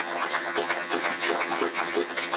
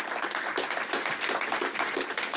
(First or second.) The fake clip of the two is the first